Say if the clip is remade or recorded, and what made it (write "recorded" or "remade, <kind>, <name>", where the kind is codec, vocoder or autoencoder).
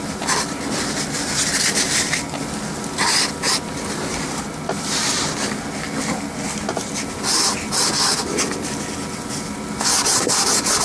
recorded